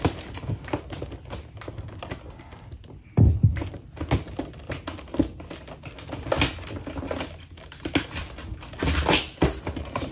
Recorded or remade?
recorded